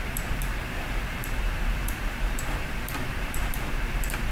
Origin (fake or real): fake